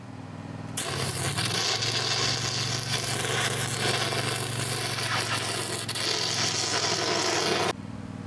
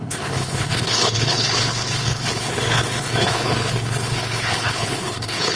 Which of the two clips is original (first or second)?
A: first